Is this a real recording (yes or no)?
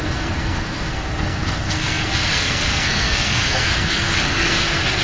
no